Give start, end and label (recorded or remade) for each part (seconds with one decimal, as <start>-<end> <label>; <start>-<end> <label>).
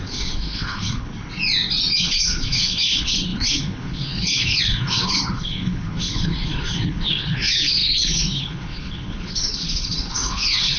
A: 0.0-1.1 remade; 1.1-2.0 recorded; 2.0-10.8 remade